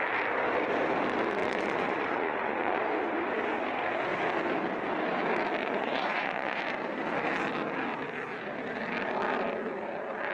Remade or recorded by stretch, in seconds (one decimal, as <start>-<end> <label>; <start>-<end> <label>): 0.0-1.4 recorded; 1.4-2.8 remade; 2.8-5.6 recorded; 5.6-6.6 remade; 6.6-10.3 recorded